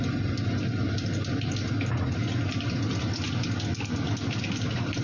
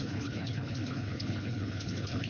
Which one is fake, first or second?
second